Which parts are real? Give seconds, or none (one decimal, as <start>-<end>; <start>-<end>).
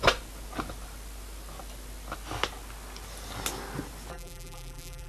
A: 0.0-4.1